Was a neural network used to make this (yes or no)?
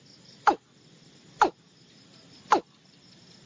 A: no